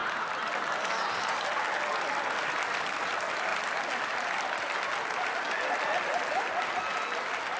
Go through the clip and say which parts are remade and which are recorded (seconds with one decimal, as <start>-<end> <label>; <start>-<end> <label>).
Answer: 0.0-7.6 recorded